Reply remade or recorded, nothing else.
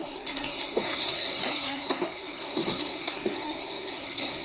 remade